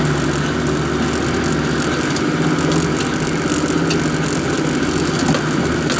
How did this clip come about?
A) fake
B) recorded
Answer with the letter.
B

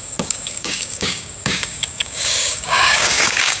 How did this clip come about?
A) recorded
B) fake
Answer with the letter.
B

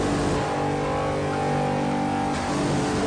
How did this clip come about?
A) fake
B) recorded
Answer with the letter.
B